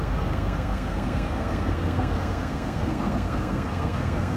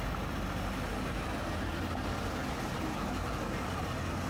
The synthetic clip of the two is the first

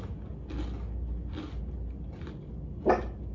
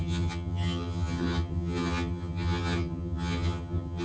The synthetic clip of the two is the second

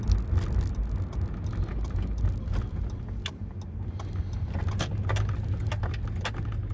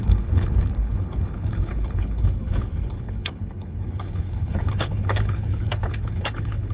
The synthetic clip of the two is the second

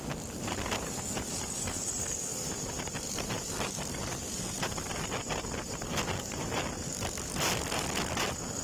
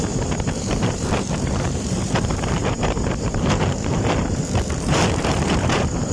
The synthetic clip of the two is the second